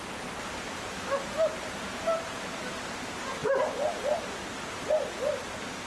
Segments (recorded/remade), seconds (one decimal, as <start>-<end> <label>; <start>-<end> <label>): 0.0-5.9 recorded